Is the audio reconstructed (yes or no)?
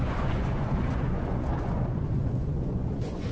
yes